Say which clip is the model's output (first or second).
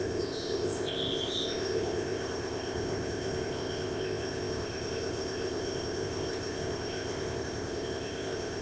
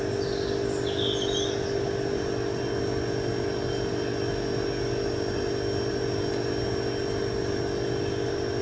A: first